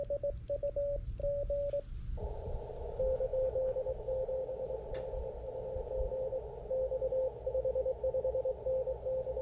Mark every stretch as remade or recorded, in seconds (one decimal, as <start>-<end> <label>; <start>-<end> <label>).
0.0-9.4 recorded